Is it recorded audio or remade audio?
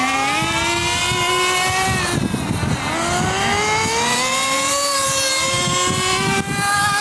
recorded